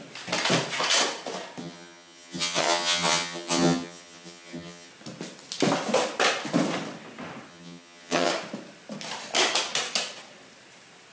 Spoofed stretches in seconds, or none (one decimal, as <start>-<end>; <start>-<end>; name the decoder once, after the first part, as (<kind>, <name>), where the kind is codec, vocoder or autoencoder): 1.6-4.9 (vocoder, HiFi-GAN); 7.5-8.3